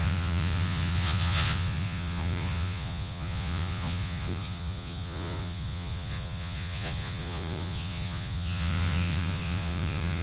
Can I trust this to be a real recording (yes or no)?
no